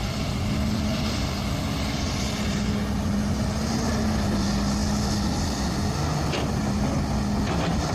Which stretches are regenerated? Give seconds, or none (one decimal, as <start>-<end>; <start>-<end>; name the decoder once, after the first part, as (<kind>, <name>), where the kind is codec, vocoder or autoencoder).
none